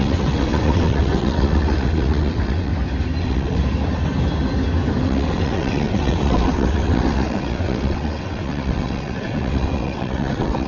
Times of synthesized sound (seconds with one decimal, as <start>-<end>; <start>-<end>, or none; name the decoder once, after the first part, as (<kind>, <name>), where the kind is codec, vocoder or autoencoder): 0.0-2.7 (vocoder, WaveNeXt); 3.2-3.6; 5.0-10.7